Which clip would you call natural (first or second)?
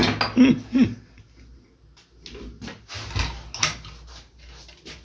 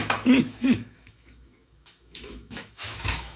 first